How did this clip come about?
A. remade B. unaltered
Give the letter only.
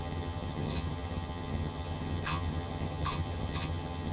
A